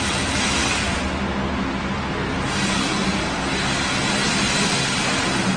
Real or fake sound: real